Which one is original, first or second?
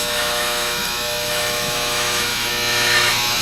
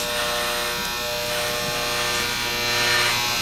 second